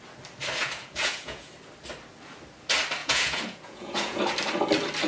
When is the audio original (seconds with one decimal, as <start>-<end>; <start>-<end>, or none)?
0.0-0.6; 1.5-3.0; 4.2-5.1